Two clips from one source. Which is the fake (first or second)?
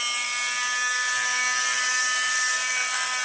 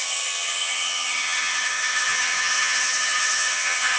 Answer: second